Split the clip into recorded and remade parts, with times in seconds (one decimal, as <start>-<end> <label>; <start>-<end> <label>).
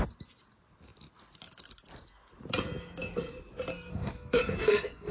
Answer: 0.0-3.9 recorded; 3.9-5.1 remade